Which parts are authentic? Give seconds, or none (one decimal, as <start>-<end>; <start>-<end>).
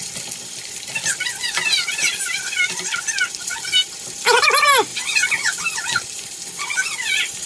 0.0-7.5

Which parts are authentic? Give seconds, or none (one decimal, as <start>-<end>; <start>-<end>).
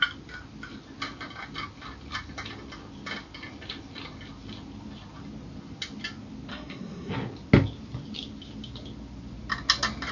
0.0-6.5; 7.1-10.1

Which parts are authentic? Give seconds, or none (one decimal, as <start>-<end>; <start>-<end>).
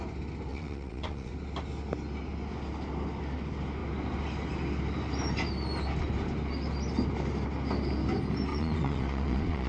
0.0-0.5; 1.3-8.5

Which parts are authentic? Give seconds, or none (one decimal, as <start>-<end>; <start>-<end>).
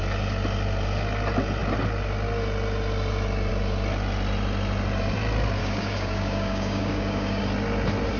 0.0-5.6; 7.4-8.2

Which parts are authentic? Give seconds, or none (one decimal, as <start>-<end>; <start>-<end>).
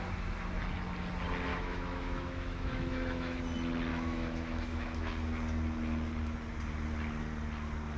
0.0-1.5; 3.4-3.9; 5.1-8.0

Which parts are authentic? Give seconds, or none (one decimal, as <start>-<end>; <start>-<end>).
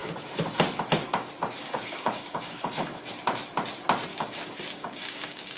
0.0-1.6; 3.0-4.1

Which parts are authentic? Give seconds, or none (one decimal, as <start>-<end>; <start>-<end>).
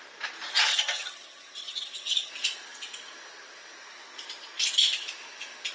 0.0-0.7; 2.3-5.7